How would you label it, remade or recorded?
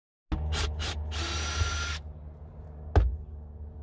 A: recorded